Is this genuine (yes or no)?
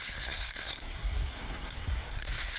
no